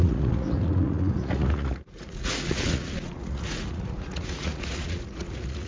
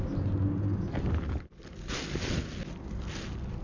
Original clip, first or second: second